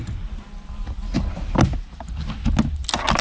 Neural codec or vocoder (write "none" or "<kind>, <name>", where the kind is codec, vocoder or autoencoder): none